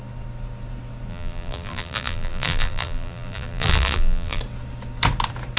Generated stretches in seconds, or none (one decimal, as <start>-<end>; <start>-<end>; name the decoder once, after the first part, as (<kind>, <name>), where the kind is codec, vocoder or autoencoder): 1.1-4.4 (vocoder, BigVGAN v2)